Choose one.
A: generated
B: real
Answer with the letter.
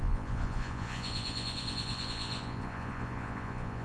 A